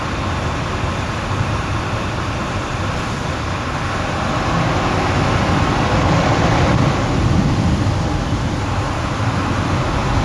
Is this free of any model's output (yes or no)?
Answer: yes